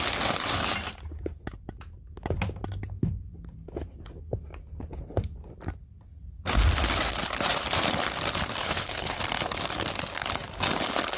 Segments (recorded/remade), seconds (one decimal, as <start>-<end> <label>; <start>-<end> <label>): 0.0-8.6 recorded; 8.6-9.2 remade; 9.2-11.2 recorded